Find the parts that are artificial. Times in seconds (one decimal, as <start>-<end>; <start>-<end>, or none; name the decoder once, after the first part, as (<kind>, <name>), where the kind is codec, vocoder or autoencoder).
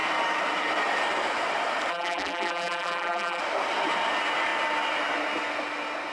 1.9-3.4 (vocoder, BigVGAN v2)